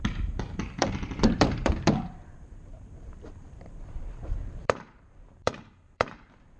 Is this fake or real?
fake